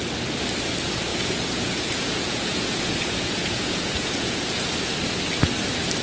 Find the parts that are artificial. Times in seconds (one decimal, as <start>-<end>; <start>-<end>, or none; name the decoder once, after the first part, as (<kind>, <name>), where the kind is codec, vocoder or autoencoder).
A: 1.1-4.7 (vocoder, Vocos)